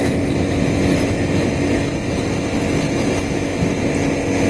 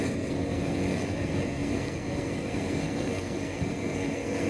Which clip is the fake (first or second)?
second